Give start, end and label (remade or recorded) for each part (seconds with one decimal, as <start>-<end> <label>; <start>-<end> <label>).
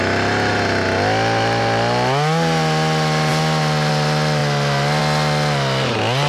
0.0-6.3 recorded